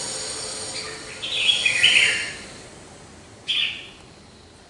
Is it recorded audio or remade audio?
recorded